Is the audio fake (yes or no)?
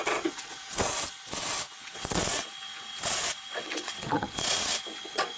yes